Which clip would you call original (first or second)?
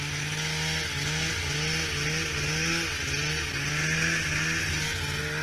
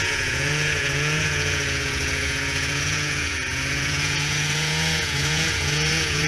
first